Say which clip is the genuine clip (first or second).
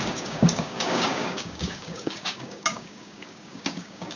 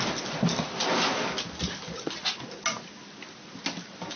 second